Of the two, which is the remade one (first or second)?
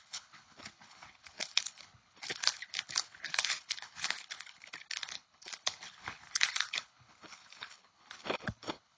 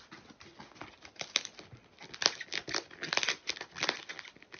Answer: first